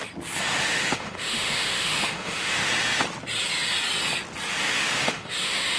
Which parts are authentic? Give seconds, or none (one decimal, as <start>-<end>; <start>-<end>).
0.0-0.6; 2.7-4.6